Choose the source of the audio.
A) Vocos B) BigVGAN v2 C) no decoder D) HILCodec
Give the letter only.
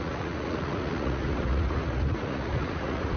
A